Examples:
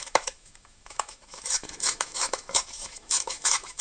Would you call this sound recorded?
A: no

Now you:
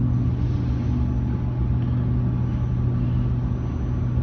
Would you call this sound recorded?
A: yes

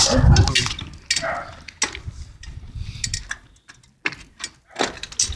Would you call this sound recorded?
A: yes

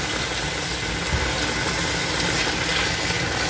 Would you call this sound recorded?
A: yes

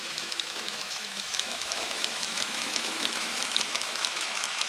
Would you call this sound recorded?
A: no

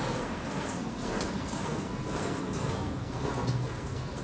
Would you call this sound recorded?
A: no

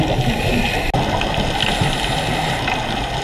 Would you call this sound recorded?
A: yes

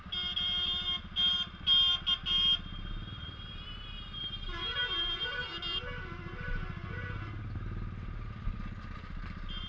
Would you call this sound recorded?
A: yes